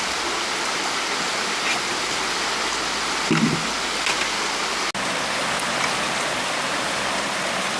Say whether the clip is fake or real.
real